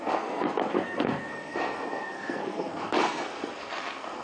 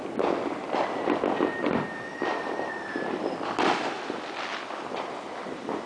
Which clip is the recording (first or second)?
second